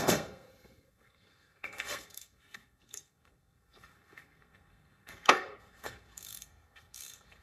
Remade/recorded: remade